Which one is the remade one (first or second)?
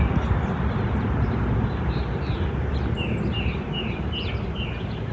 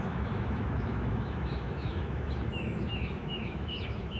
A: second